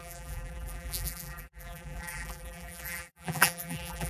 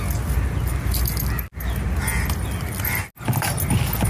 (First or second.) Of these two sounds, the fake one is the first